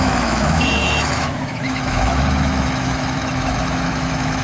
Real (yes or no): no